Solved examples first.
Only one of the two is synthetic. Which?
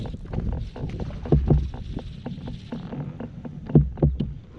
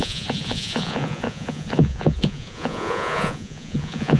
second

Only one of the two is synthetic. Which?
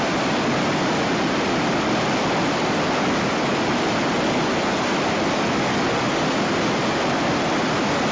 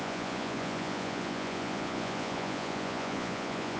second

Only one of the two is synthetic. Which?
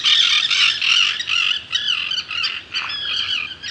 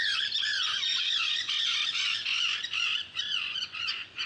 second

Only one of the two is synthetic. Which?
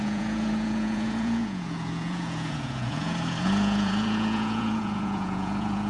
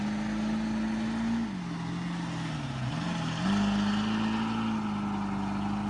first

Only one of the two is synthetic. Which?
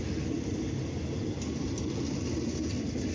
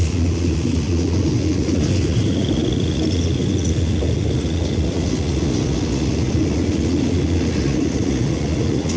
second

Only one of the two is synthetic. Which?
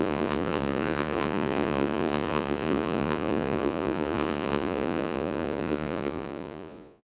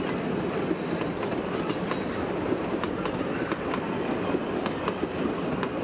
first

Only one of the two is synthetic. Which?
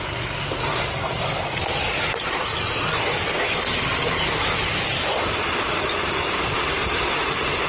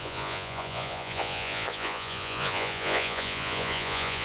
second